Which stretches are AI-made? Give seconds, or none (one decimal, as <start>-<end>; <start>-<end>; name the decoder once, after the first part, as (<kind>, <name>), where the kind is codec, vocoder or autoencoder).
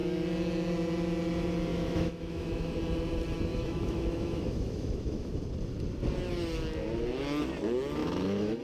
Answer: 1.7-2.7 (autoencoder, DAC-VAE); 3.5-5.4; 8.0-8.6